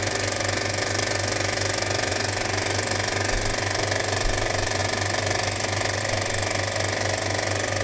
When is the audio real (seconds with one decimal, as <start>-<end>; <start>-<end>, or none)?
0.0-7.8